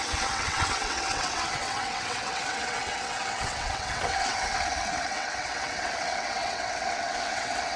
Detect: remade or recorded remade